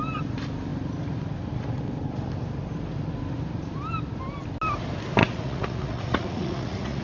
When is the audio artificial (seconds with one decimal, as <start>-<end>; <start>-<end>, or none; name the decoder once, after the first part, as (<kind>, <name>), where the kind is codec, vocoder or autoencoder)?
5.2-7.0 (vocoder, Vocos)